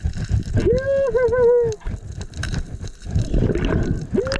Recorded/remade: recorded